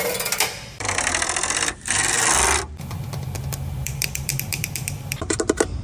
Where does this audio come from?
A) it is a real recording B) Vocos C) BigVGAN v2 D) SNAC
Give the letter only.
C